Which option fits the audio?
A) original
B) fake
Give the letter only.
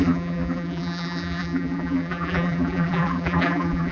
B